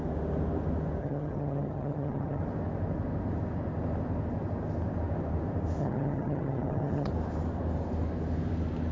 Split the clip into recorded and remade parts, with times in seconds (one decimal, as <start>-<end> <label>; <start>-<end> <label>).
0.0-1.0 recorded; 1.0-2.4 remade; 2.4-5.8 recorded; 5.8-7.1 remade; 7.1-8.9 recorded